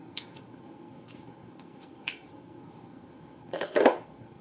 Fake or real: fake